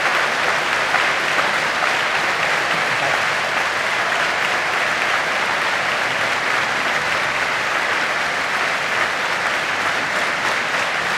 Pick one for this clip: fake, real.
real